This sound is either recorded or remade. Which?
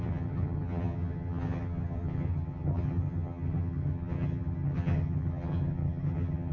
remade